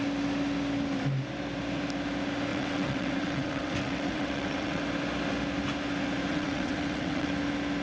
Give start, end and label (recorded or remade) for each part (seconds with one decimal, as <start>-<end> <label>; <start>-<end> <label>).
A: 0.0-2.5 recorded; 2.5-4.8 remade; 4.8-6.3 recorded; 6.3-7.3 remade; 7.3-7.8 recorded